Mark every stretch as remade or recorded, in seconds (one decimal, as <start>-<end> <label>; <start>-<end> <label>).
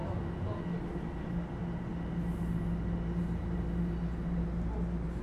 0.0-5.2 recorded